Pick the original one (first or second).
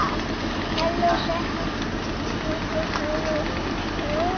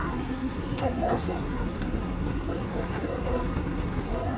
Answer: first